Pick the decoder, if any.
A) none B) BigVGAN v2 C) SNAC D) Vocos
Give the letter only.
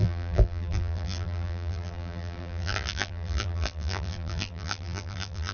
B